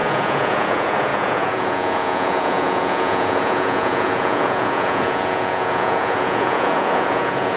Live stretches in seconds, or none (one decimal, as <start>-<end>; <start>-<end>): none